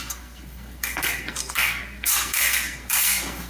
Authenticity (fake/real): fake